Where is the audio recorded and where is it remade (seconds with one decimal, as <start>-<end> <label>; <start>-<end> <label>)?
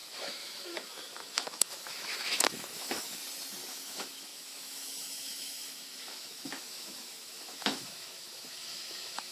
0.0-3.2 remade; 3.2-3.7 recorded; 3.7-9.3 remade